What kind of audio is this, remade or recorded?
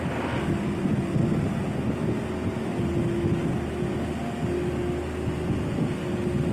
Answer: recorded